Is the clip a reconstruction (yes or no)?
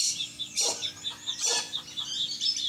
no